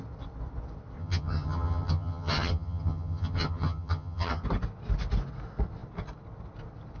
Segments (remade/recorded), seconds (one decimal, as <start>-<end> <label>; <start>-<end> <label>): 0.0-1.0 recorded; 1.0-4.4 remade; 4.4-7.0 recorded